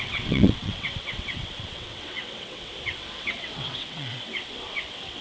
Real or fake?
fake